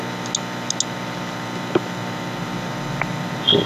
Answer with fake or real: real